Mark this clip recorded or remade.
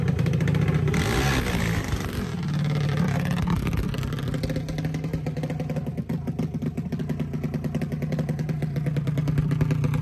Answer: recorded